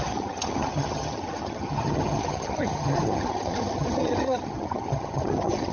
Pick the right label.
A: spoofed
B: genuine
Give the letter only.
A